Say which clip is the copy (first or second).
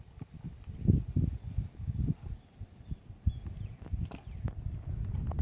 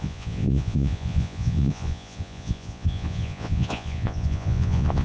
second